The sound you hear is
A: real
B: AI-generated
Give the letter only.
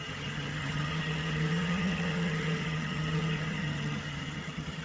B